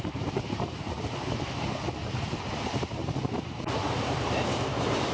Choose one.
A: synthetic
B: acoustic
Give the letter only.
A